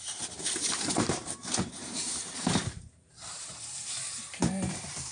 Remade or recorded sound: remade